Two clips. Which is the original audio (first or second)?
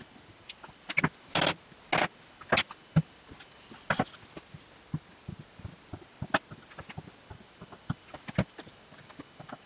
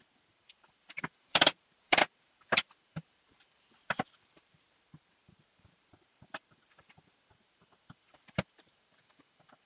first